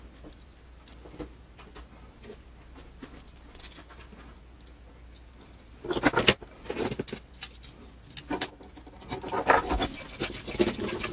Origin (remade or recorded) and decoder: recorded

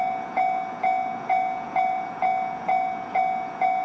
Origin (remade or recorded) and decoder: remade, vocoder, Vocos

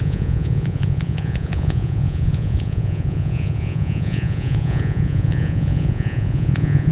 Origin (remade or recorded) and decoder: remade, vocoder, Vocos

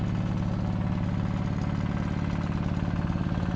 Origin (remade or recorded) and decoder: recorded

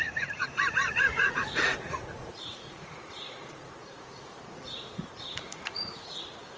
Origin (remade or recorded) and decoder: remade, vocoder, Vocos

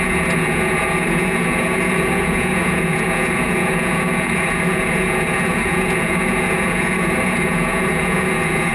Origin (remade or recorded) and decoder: remade, vocoder, Vocos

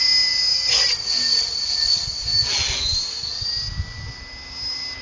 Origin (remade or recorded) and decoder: recorded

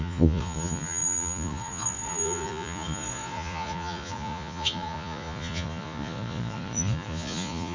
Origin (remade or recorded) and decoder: remade, vocoder, Vocos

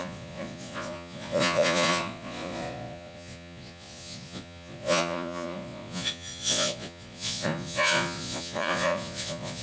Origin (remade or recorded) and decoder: remade, vocoder, Vocos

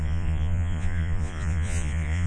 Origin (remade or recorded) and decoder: remade, vocoder, Vocos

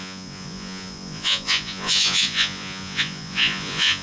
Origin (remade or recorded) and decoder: remade, vocoder, Vocos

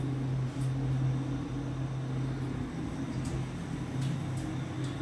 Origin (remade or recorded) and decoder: recorded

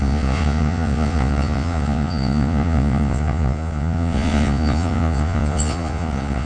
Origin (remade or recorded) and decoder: remade, vocoder, Vocos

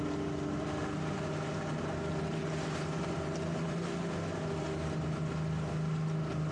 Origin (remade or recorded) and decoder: recorded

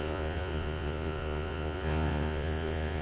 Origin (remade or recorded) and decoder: remade, vocoder, Vocos